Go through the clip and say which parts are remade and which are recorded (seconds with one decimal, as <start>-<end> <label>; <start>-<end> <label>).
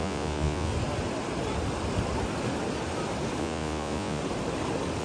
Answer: 0.0-0.7 remade; 0.7-3.4 recorded; 3.4-4.2 remade; 4.2-5.0 recorded